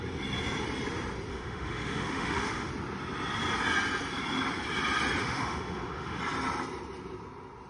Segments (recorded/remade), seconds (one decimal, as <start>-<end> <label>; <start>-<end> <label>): 0.0-1.3 recorded; 1.3-2.7 remade; 2.7-5.2 recorded; 5.2-6.2 remade; 6.2-7.7 recorded

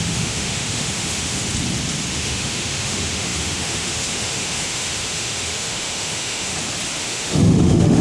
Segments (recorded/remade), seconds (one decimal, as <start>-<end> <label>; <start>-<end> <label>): 0.0-1.5 remade; 1.5-2.1 recorded; 2.1-6.5 remade; 6.5-7.0 recorded; 7.0-8.0 remade

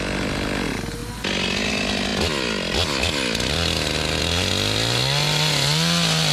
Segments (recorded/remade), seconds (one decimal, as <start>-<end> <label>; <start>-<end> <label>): 0.0-6.3 recorded